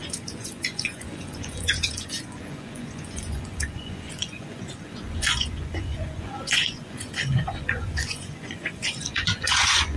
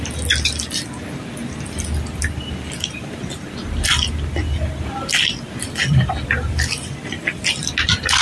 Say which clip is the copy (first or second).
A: first